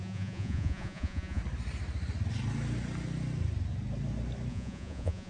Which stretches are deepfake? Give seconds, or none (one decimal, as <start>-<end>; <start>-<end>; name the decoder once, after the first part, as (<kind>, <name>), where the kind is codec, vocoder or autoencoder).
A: 0.0-1.4 (vocoder, Vocos); 4.5-5.3